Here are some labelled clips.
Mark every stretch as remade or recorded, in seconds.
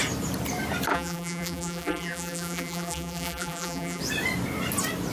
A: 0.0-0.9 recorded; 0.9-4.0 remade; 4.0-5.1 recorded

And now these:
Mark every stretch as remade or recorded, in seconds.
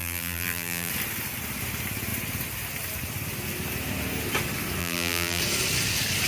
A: 0.0-0.9 remade; 0.9-4.8 recorded; 4.8-5.4 remade; 5.4-6.3 recorded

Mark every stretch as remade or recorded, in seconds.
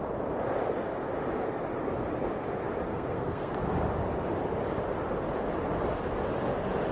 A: 0.0-2.9 recorded; 2.9-3.6 remade; 3.6-6.9 recorded